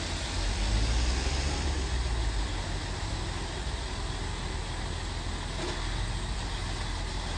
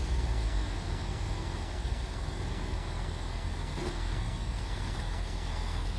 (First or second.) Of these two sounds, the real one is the first